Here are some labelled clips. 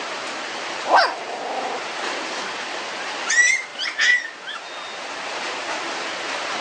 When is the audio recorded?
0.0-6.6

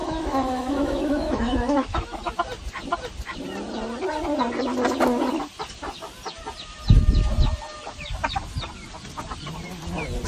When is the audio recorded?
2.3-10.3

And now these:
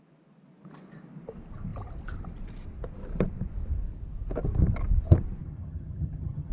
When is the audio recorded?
0.0-5.4

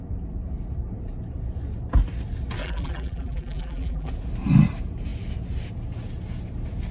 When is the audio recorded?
0.0-2.6; 4.1-6.9

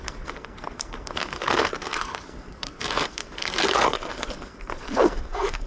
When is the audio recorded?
none

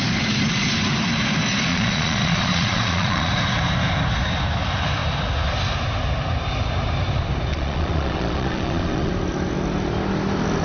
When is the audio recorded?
0.0-1.7; 3.3-7.5; 9.1-10.6

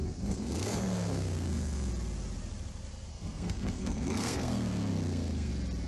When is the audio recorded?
1.9-3.1; 5.5-5.9

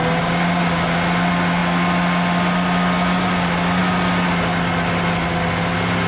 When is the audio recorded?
0.0-6.1